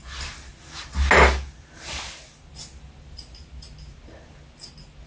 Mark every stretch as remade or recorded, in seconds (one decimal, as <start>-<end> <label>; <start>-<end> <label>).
0.0-5.1 recorded